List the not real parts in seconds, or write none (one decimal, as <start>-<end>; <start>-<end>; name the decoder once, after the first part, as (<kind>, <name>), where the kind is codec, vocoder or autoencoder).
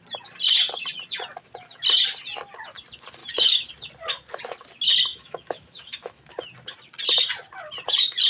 3.2-3.7 (autoencoder, DAC-VAE); 5.1-6.3